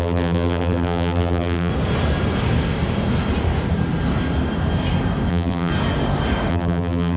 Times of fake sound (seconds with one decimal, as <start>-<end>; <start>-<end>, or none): 0.0-1.7; 5.3-5.7; 6.5-7.2